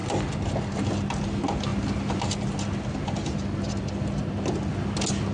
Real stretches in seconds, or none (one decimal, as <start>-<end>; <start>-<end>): 0.0-5.3